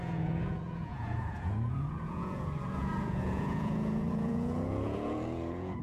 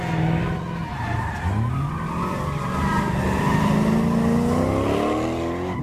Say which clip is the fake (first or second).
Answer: first